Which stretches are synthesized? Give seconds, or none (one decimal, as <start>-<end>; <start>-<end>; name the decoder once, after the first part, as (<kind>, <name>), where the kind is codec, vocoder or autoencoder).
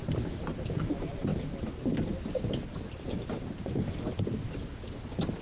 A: 0.0-0.9 (vocoder, BigVGAN v2)